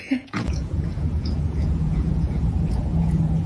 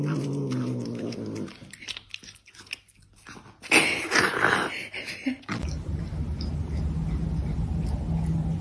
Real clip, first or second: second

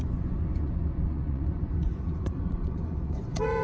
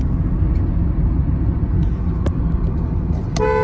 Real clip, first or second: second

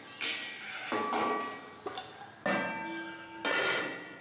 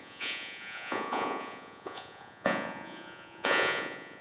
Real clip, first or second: first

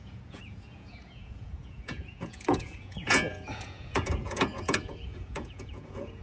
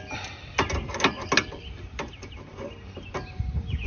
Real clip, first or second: second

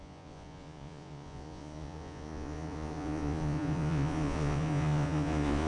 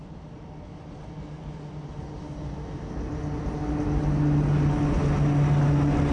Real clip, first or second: second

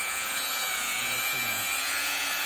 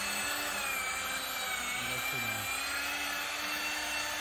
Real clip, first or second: second